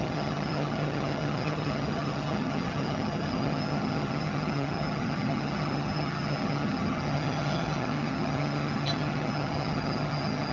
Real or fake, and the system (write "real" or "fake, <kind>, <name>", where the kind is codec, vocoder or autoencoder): fake, vocoder, HiFi-GAN